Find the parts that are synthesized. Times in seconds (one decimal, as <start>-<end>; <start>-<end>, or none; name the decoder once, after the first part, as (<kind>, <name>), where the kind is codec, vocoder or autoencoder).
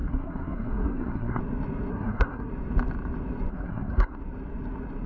0.0-1.4 (codec, SNAC); 1.9-2.5; 3.5-4.2